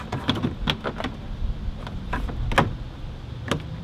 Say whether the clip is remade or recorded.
recorded